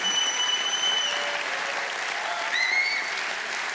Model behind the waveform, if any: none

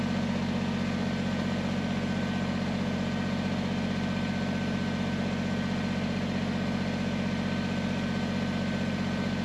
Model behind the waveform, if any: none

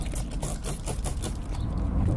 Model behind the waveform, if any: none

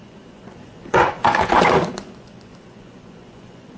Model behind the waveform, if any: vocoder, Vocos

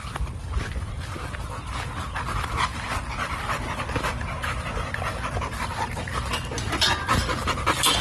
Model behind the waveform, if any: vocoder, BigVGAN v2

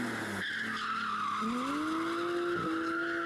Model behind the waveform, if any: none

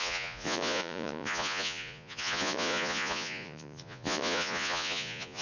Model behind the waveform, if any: vocoder, Vocos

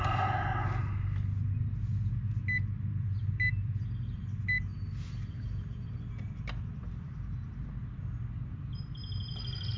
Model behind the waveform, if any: none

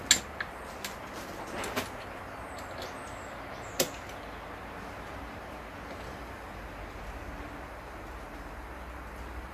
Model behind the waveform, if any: none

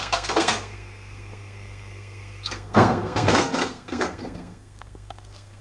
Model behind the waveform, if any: codec, SNAC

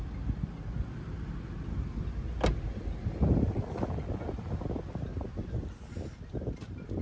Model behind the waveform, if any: none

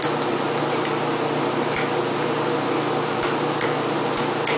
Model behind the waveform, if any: none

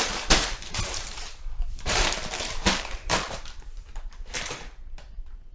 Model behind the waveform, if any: vocoder, BigVGAN v2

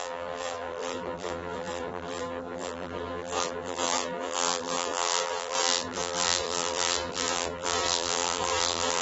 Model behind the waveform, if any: vocoder, BigVGAN v2